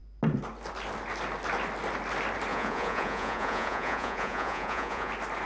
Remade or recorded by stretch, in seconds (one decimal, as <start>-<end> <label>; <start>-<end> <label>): 0.0-2.5 recorded; 2.5-5.1 remade; 5.1-5.5 recorded